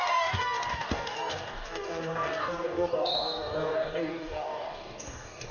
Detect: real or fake fake